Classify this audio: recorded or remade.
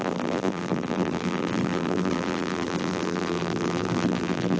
remade